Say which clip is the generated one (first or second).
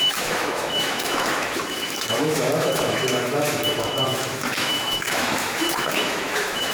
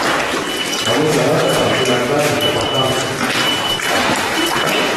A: first